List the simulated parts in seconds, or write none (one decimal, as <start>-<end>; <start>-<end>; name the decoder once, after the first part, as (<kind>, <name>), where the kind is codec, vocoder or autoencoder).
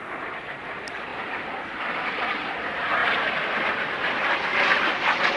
none